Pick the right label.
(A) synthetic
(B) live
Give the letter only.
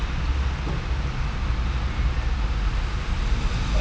B